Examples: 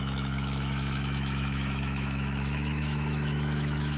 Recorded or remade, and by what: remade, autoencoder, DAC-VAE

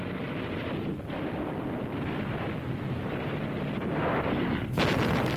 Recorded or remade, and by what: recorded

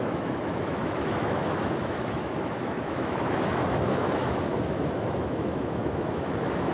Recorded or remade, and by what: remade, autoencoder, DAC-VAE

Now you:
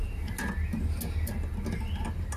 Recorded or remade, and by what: recorded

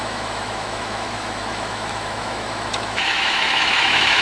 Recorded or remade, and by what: remade, autoencoder, DAC-VAE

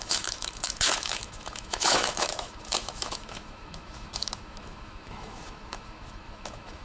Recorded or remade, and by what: remade, autoencoder, DAC-VAE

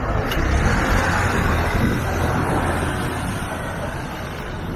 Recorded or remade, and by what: recorded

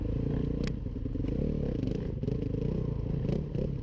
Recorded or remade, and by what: recorded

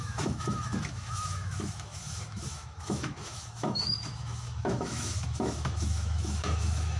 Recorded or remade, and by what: remade, autoencoder, DAC-VAE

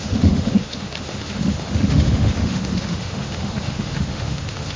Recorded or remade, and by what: remade, autoencoder, DAC-VAE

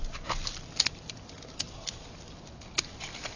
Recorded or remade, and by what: recorded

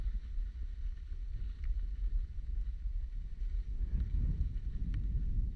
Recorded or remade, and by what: recorded